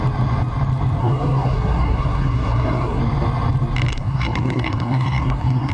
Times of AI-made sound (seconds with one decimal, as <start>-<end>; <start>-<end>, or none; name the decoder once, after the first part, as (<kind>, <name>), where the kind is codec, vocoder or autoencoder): 1.0-3.0 (codec, SNAC); 3.9-5.7